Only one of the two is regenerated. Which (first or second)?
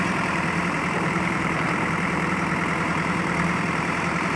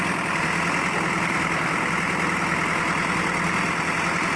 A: first